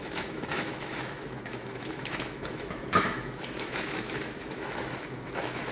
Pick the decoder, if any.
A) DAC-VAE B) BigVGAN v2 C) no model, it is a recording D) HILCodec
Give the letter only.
A